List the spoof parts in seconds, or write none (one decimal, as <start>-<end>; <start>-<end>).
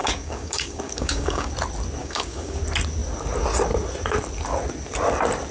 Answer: 0.0-1.5; 2.0-2.6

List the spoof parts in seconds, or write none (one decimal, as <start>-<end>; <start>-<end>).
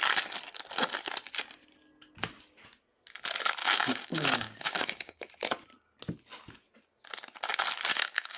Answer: 3.6-5.2; 7.9-8.4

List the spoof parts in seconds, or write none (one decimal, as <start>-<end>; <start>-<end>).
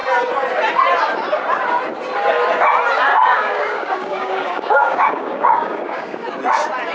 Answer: 3.1-6.4